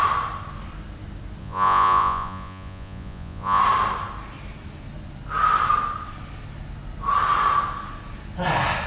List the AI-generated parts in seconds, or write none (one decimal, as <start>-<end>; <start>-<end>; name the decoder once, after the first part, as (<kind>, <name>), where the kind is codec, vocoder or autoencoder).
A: 1.4-3.6 (vocoder, Vocos)